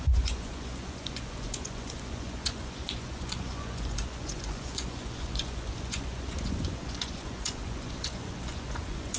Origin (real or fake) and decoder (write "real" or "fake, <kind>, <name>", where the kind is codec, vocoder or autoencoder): fake, vocoder, Vocos